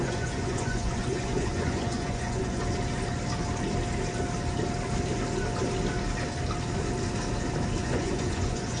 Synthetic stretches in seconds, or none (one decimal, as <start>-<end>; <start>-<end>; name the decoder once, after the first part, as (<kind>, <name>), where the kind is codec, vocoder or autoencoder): 0.0-2.6 (vocoder, Vocos); 7.8-8.8